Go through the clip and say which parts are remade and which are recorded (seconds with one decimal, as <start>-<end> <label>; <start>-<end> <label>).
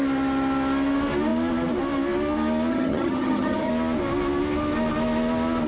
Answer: 0.0-2.7 recorded; 2.7-3.7 remade; 3.7-5.7 recorded